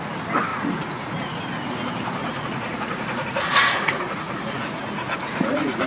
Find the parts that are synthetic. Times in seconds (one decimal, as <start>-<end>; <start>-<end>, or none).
0.5-1.4; 2.2-5.9